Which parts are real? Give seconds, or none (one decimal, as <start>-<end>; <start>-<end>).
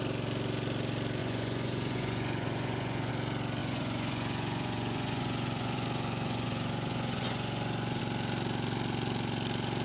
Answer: 0.0-1.2; 3.1-3.6; 8.0-9.8